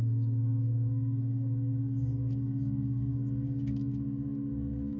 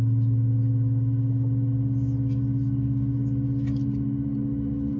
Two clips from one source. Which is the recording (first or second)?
second